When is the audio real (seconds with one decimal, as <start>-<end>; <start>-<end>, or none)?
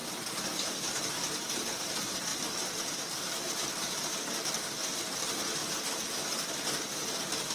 5.6-6.9